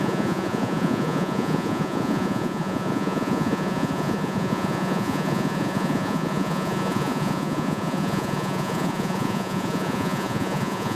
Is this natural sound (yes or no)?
no